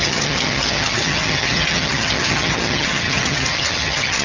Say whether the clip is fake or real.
fake